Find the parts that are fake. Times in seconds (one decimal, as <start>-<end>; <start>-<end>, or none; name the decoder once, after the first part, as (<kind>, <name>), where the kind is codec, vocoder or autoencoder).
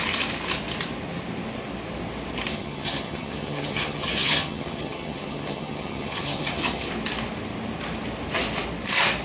2.5-6.9 (vocoder, HiFi-GAN)